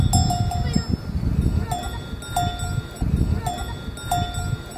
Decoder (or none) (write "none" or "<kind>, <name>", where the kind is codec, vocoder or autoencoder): none